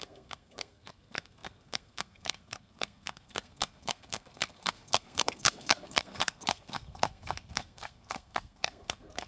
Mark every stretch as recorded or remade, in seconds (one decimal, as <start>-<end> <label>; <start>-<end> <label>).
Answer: 0.0-9.3 remade